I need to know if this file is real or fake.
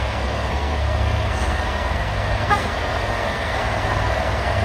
fake